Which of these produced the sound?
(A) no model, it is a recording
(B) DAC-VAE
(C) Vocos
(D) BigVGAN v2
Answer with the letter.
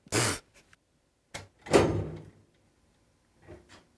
A